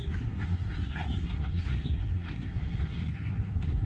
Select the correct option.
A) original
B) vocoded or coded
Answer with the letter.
B